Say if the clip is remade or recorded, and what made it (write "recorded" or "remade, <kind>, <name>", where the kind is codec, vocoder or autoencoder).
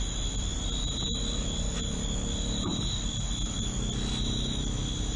recorded